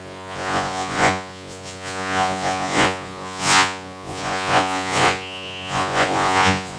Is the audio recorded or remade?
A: remade